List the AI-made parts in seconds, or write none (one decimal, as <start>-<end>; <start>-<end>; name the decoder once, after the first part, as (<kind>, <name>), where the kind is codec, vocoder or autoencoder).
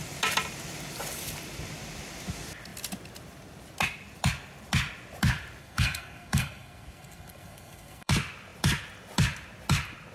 5.6-8.1 (codec, SNAC)